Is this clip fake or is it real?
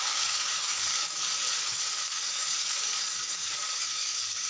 fake